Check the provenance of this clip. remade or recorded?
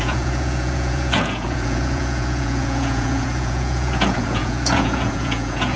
remade